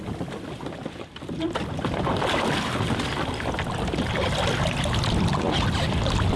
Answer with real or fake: real